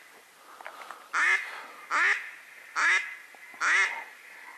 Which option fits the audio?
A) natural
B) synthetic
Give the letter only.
A